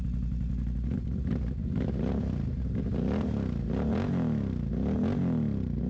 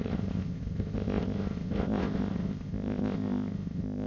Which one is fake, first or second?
second